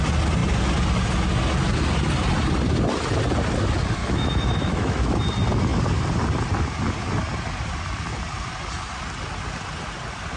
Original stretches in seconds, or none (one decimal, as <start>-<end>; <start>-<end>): 0.0-4.0; 5.2-10.4

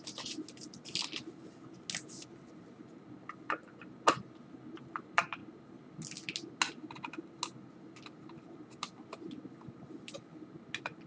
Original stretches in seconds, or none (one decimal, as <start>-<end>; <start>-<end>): 0.0-11.1

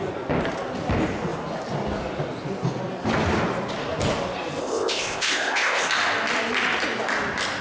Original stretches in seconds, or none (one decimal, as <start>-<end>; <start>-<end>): 0.0-4.6; 5.9-7.6

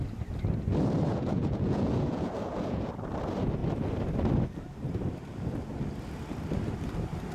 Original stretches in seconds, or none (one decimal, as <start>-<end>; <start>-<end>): 0.0-1.1; 2.9-7.3

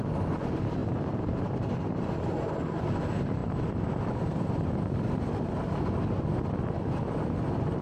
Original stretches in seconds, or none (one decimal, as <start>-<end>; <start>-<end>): 0.0-0.8; 2.1-7.8